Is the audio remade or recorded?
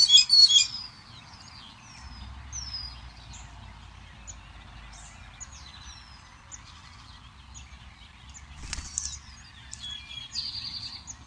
recorded